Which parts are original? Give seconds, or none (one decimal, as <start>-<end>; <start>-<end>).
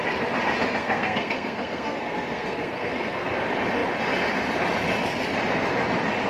0.0-0.8; 3.3-6.3